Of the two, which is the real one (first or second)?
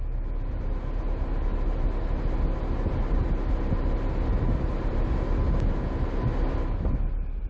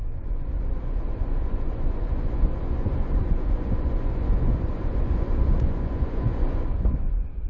first